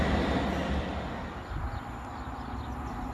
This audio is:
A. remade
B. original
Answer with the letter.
B